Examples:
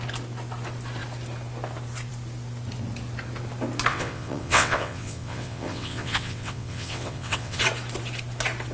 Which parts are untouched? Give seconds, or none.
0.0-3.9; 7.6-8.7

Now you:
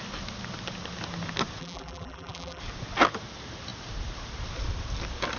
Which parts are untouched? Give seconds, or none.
0.0-1.6; 2.6-5.4

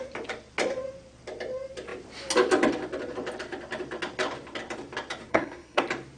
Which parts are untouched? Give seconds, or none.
0.0-5.3; 5.8-6.2

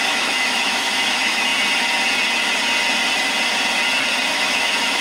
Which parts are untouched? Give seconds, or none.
1.5-4.3

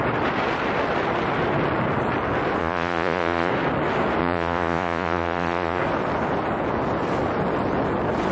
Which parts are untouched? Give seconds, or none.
0.0-2.6; 3.5-4.2; 5.8-8.3